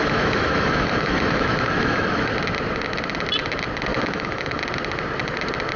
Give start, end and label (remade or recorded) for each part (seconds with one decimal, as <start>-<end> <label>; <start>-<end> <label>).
0.0-2.3 remade; 2.3-3.9 recorded; 3.9-4.6 remade; 4.6-5.8 recorded